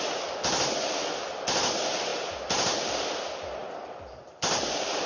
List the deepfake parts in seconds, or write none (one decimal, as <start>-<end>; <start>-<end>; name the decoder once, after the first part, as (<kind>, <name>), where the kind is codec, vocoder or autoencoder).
none